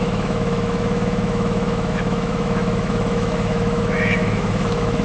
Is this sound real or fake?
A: fake